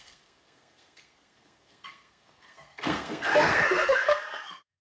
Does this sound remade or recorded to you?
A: remade